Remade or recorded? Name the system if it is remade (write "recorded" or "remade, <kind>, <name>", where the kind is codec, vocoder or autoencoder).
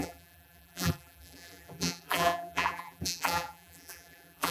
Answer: remade, vocoder, BigVGAN v2